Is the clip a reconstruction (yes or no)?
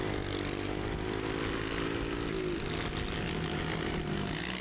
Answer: no